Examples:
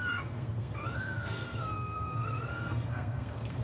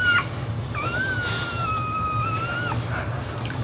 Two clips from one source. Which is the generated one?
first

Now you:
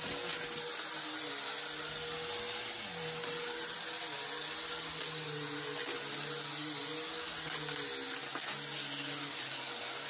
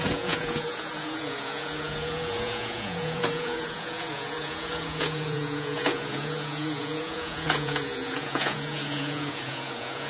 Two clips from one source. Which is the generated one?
second